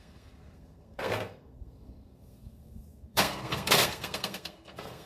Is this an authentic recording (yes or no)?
no